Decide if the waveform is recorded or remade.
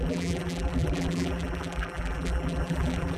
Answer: remade